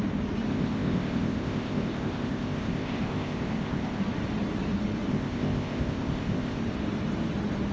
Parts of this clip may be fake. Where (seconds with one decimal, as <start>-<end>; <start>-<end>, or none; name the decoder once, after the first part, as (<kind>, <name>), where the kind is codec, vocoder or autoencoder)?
0.5-4.0 (codec, ZipCodec); 5.1-6.6